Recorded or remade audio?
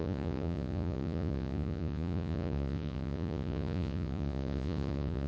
remade